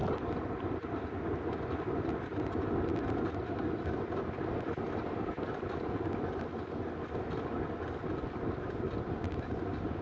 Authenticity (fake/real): real